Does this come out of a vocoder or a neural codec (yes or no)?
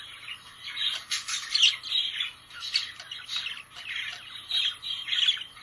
no